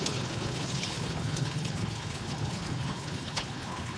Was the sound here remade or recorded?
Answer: remade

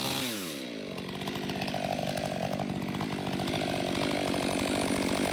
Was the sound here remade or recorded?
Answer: recorded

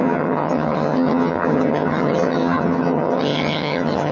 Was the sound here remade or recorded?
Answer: remade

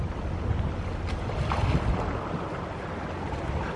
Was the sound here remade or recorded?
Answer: recorded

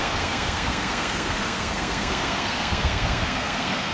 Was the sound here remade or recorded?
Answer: remade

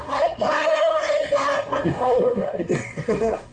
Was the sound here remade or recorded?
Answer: remade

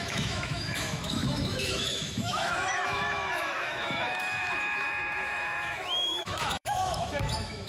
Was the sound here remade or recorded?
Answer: remade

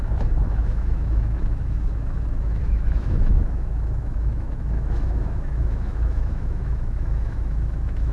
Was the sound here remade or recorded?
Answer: remade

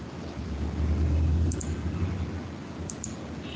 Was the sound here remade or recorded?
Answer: recorded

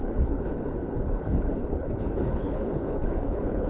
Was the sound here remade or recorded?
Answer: remade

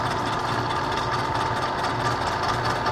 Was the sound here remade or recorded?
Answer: recorded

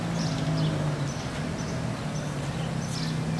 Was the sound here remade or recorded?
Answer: recorded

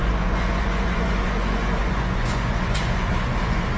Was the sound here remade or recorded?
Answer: remade